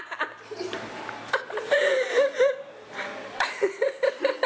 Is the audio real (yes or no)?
no